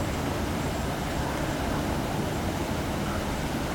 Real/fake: fake